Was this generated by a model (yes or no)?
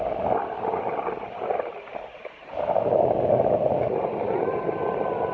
no